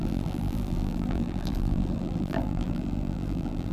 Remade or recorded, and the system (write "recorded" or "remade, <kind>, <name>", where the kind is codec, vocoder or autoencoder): remade, vocoder, BigVGAN v2